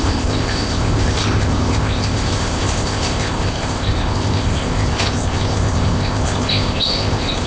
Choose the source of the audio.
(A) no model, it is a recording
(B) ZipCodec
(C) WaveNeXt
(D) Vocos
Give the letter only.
B